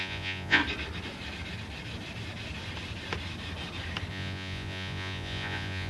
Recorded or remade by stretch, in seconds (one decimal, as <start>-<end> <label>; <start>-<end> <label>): 0.0-0.6 remade; 0.6-4.1 recorded; 4.1-5.9 remade